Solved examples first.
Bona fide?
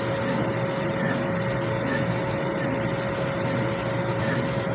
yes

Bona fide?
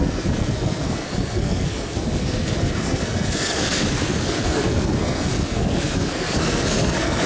no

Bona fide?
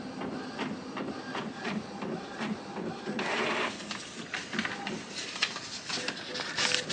yes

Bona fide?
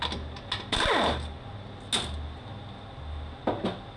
yes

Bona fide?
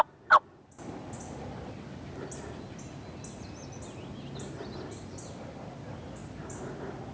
yes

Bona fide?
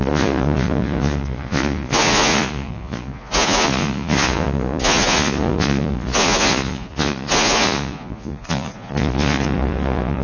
no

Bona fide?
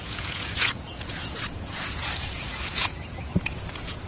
no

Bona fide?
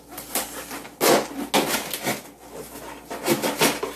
yes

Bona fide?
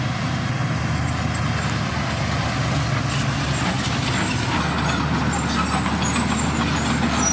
yes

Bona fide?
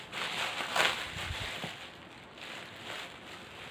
yes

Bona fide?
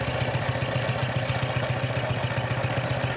yes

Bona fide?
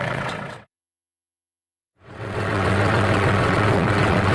no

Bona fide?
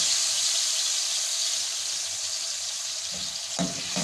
yes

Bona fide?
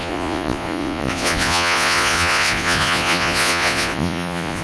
no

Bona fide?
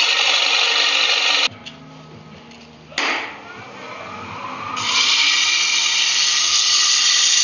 yes